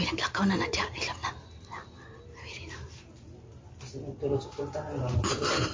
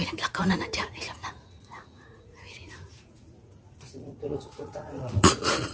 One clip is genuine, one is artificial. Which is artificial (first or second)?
second